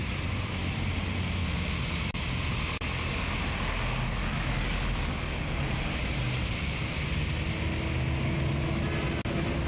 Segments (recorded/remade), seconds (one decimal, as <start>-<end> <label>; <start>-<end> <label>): 0.0-4.2 recorded; 4.2-5.7 remade; 5.7-9.7 recorded